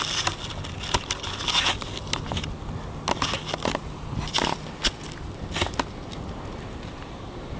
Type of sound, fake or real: real